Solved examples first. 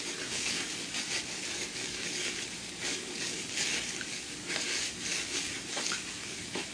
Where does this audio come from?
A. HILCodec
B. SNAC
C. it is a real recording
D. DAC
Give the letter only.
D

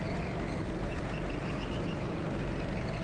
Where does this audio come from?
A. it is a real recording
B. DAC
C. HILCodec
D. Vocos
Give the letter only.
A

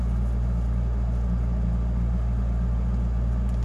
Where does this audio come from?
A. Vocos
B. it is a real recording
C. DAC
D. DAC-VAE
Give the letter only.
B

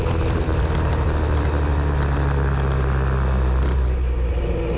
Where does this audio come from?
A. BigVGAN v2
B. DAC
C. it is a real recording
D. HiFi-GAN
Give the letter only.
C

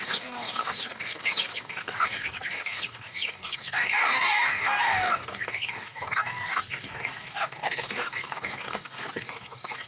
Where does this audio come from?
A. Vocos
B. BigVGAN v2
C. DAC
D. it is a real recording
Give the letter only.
C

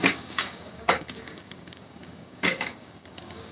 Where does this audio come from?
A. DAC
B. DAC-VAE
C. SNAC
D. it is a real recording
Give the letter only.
A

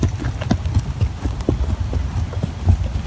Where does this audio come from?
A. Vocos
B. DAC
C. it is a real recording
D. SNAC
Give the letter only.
C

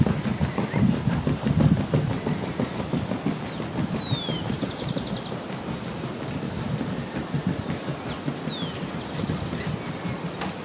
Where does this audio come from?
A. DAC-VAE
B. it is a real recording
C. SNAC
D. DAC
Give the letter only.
B